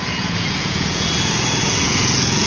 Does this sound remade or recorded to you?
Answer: remade